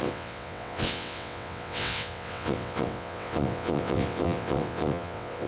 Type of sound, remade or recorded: remade